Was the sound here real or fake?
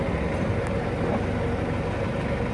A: real